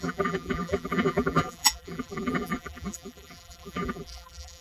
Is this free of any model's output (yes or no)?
no